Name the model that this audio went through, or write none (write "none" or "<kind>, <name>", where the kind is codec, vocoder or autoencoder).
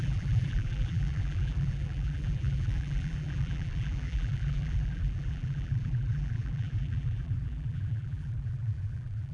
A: vocoder, BigVGAN v2